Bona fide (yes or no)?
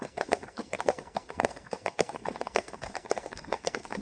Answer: no